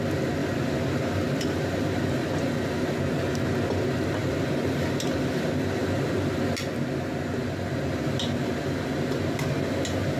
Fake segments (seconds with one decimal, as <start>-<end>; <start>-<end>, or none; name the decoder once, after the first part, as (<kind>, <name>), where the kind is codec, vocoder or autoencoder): none